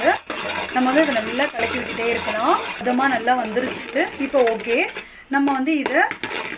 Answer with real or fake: real